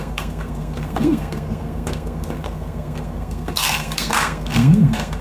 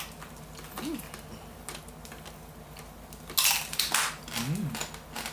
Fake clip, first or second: first